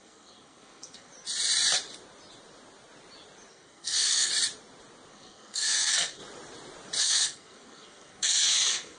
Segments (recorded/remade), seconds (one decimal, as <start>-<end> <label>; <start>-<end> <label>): 0.0-1.1 remade; 1.1-3.5 recorded; 3.5-4.3 remade; 4.3-5.1 recorded; 5.1-6.2 remade; 6.2-7.0 recorded; 7.0-9.0 remade